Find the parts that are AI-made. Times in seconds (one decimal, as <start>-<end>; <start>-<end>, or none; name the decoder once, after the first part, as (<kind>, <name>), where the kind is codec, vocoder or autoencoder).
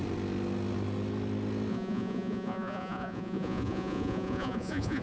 1.7-5.0 (vocoder, Vocos)